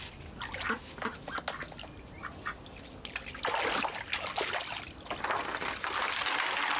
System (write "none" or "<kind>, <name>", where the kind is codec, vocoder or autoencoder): none